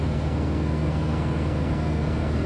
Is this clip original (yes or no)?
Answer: no